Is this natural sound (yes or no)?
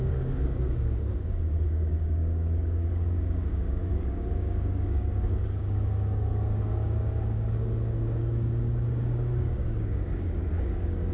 no